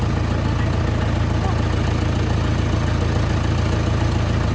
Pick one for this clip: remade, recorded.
recorded